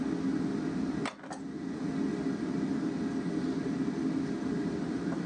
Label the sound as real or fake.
real